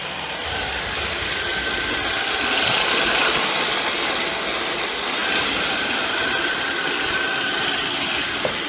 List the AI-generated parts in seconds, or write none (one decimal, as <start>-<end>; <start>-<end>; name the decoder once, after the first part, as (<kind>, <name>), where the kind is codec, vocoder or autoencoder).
none